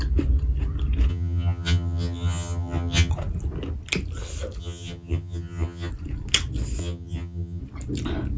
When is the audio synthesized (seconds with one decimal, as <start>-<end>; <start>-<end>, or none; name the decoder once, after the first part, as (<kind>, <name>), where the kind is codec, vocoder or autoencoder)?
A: 1.1-3.1 (vocoder, HiFi-GAN); 4.6-5.9; 6.8-7.6